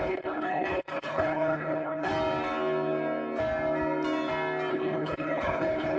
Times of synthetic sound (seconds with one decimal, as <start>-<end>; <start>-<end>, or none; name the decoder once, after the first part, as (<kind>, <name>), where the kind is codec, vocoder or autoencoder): 0.0-2.1 (codec, HILCodec); 4.7-6.0